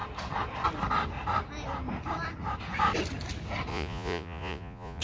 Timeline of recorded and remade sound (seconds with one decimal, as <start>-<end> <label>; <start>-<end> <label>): 0.0-3.7 recorded; 3.7-5.0 remade